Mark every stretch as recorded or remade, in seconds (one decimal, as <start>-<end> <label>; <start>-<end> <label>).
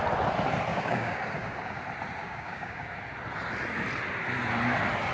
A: 0.0-0.7 recorded; 0.7-1.8 remade; 1.8-2.2 recorded; 2.2-3.0 remade; 3.0-5.1 recorded